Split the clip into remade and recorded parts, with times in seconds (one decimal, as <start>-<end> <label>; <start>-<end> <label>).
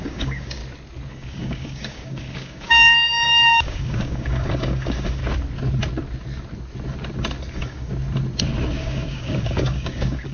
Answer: 0.0-0.6 remade; 0.6-1.1 recorded; 1.1-5.2 remade; 5.2-7.5 recorded; 7.5-7.9 remade; 7.9-8.8 recorded; 8.8-10.3 remade